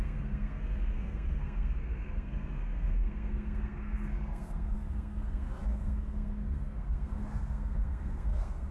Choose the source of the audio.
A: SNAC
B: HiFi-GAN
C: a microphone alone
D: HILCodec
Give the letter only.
A